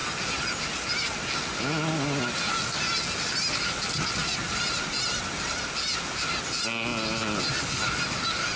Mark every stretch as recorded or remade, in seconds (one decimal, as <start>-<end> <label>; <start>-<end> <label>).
0.0-8.6 recorded